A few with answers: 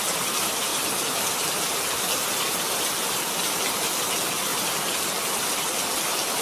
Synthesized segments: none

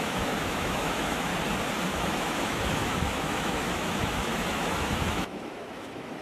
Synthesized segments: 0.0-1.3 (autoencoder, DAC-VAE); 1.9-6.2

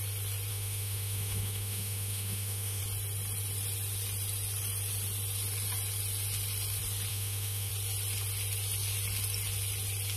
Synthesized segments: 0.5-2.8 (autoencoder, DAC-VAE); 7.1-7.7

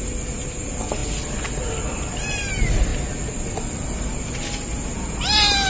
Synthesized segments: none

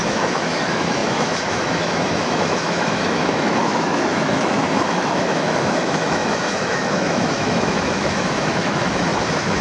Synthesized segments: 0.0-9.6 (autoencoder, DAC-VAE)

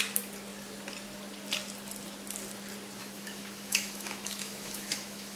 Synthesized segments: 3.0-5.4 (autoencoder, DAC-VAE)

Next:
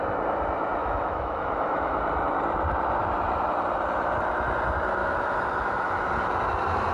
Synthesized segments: 0.8-2.0 (autoencoder, DAC-VAE); 5.0-6.1

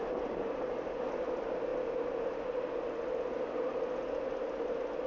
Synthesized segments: none